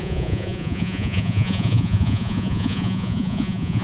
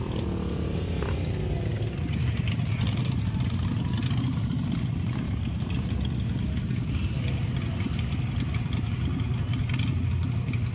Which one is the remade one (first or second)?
first